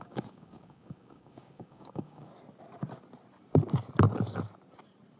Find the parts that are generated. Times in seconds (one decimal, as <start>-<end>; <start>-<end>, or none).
0.0-2.3